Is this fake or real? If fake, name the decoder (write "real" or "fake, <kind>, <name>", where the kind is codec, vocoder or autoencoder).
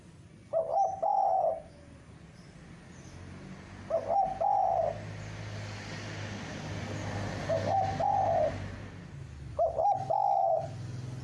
real